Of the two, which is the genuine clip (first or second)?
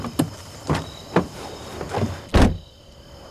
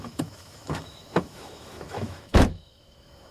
first